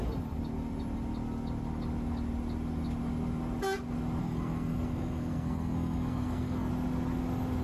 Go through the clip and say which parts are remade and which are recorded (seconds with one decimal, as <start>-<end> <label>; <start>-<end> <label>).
0.0-4.2 recorded; 4.2-6.7 remade; 6.7-7.6 recorded